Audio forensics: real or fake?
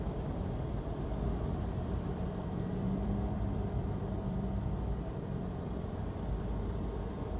fake